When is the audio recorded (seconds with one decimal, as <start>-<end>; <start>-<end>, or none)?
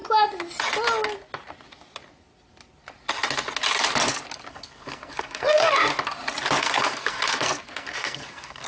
0.0-4.5; 5.9-6.6